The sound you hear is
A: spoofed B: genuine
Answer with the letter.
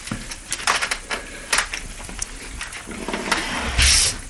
B